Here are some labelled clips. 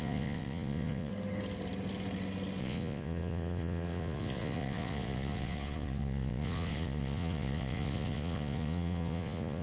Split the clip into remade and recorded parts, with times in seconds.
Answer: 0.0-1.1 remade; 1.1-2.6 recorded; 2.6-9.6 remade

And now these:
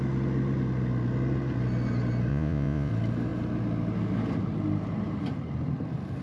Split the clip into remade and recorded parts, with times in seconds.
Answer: 0.0-2.3 recorded; 2.3-2.9 remade; 2.9-6.2 recorded